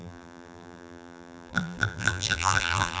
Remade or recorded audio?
remade